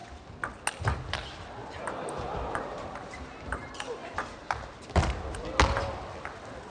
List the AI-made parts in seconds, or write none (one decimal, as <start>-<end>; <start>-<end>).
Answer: 1.6-4.7